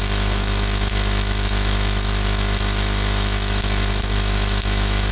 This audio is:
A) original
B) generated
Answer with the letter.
B